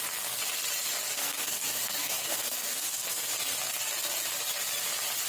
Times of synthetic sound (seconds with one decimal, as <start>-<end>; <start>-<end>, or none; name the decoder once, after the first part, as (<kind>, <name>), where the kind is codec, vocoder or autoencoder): 1.2-3.3 (codec, SNAC)